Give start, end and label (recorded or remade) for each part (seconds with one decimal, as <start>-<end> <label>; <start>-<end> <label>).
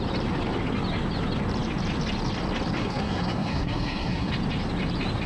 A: 0.0-2.8 recorded; 2.8-4.3 remade; 4.3-5.3 recorded